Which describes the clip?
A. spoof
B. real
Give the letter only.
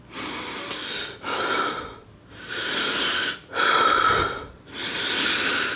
A